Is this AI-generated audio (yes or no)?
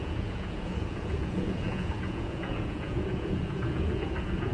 yes